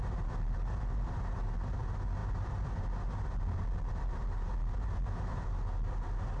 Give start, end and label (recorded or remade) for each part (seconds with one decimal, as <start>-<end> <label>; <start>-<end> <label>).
0.0-6.4 recorded